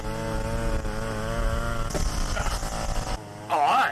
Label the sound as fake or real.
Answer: real